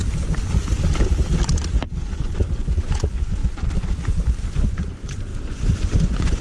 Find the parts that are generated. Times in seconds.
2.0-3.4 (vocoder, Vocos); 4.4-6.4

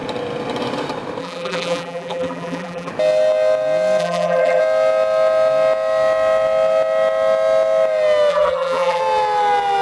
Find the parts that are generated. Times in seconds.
1.2-2.9 (vocoder, BigVGAN v2); 4.0-4.6; 8.3-9.0